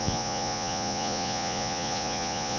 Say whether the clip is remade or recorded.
remade